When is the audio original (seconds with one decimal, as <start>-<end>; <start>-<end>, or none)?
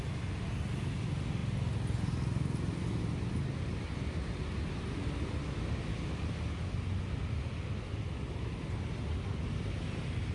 0.0-10.3